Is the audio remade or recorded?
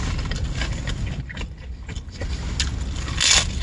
recorded